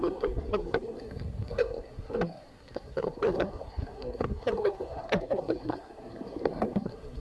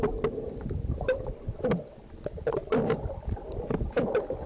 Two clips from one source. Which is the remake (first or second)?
first